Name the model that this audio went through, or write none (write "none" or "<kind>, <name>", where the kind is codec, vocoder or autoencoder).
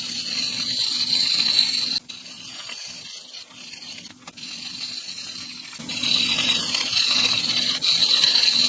none